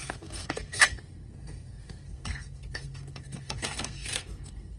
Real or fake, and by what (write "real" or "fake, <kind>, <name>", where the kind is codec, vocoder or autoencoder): fake, codec, SNAC